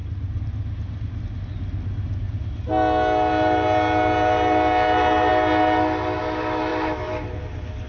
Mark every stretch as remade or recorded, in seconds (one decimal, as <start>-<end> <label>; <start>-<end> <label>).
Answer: 0.0-6.7 recorded; 6.7-7.4 remade; 7.4-7.9 recorded